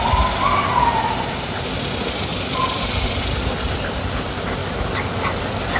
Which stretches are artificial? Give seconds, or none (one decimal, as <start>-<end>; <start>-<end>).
none